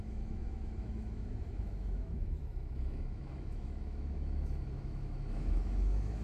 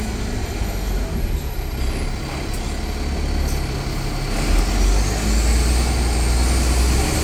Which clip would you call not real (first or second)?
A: first